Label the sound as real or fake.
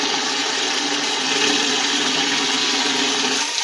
real